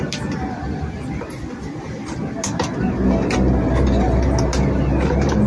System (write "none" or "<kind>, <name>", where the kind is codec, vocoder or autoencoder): none